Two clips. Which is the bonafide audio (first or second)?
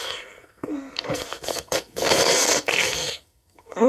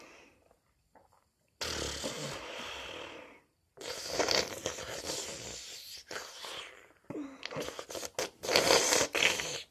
second